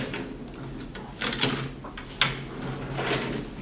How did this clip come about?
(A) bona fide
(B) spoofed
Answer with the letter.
A